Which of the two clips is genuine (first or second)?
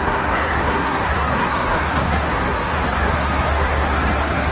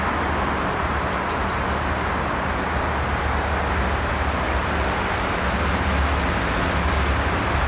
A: second